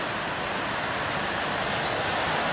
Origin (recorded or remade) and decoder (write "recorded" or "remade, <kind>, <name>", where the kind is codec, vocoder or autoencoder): recorded